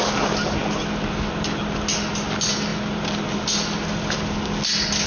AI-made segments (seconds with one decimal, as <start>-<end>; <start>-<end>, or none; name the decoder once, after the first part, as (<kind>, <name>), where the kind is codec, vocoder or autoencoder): none